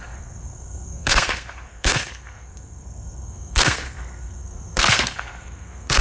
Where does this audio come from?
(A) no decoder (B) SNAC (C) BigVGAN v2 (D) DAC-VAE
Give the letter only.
B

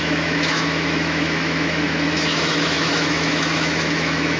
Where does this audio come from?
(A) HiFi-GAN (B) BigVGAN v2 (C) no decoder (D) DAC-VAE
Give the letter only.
D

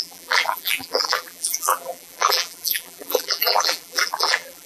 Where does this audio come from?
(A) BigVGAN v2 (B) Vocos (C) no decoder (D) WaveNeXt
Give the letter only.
A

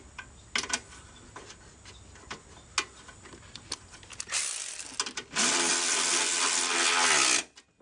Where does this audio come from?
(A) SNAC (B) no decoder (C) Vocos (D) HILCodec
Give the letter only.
B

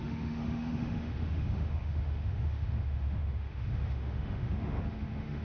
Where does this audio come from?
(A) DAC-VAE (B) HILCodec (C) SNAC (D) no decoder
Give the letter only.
A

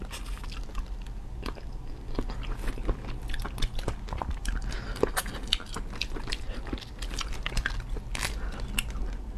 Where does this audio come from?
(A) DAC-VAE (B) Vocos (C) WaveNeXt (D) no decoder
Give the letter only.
D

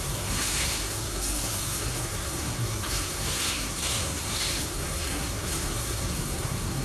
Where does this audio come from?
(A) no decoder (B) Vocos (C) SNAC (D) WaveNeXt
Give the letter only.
C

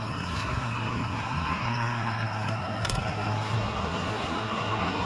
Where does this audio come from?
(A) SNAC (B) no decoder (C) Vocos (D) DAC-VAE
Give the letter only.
A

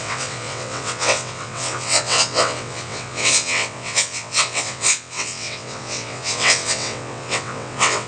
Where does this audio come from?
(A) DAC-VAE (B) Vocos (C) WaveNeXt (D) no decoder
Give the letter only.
C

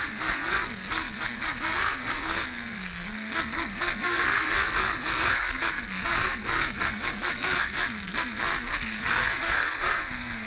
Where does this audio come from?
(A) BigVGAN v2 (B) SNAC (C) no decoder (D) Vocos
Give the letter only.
B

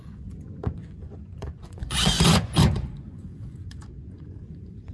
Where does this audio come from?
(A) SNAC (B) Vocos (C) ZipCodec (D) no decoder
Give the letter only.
B